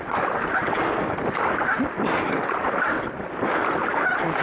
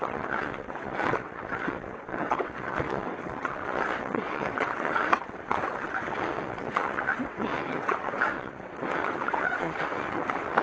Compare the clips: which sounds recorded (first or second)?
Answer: first